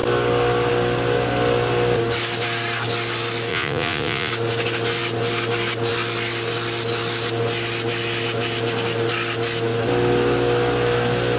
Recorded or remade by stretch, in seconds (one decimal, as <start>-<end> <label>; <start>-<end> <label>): 0.0-3.5 recorded; 3.5-4.3 remade; 4.3-11.4 recorded